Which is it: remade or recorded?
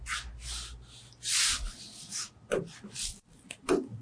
recorded